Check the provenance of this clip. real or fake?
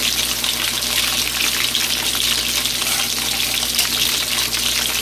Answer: real